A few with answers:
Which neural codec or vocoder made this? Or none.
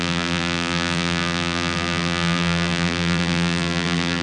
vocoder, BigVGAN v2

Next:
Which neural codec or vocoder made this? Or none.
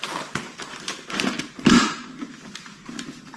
vocoder, BigVGAN v2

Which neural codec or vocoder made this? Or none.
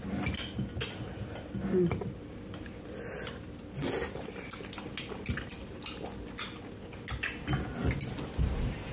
none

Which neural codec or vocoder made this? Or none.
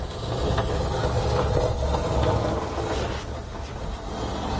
none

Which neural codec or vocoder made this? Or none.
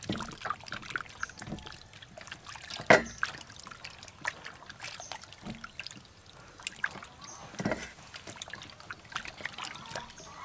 none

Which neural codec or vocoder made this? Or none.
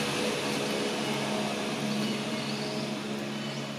none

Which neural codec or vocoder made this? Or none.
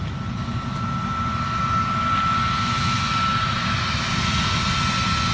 none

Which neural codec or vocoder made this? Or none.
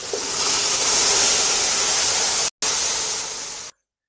none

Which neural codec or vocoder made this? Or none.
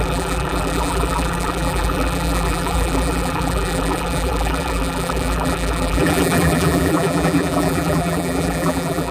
vocoder, BigVGAN v2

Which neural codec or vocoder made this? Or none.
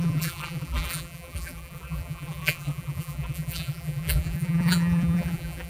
vocoder, BigVGAN v2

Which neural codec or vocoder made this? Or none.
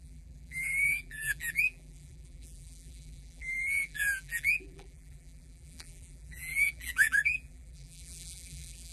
vocoder, BigVGAN v2